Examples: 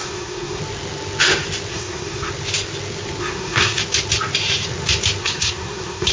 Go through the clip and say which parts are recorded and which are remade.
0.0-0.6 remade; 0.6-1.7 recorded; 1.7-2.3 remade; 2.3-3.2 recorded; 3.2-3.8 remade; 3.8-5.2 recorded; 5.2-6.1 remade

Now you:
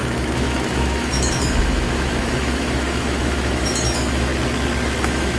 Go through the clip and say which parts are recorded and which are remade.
0.0-4.3 remade; 4.3-5.0 recorded; 5.0-5.4 remade